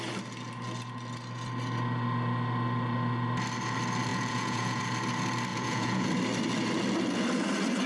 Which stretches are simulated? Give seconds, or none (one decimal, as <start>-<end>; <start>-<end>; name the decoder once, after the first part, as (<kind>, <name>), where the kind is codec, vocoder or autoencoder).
4.1-4.8 (vocoder, Vocos); 5.5-6.1